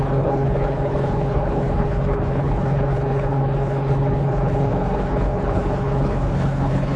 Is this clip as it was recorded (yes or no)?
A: no